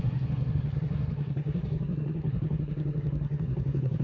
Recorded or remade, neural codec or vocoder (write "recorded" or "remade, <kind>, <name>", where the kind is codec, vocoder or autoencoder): remade, codec, SNAC